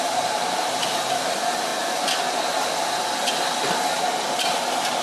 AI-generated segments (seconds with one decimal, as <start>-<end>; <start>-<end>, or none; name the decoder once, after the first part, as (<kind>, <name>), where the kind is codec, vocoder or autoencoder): 0.0-1.7 (vocoder, BigVGAN v2)